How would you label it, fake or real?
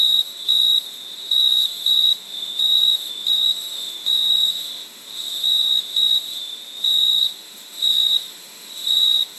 fake